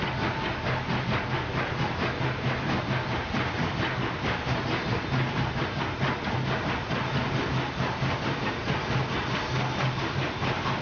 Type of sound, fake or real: real